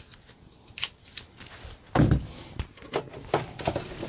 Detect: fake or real real